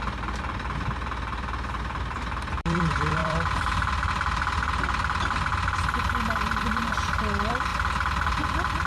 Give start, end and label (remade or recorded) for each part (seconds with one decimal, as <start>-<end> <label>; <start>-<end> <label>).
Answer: 0.0-5.5 remade; 5.5-6.6 recorded; 6.6-7.7 remade; 7.7-8.4 recorded; 8.4-8.9 remade